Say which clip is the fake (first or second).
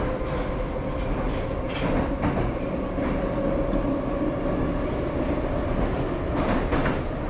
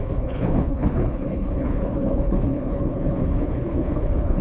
second